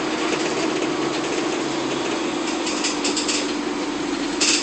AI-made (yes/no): no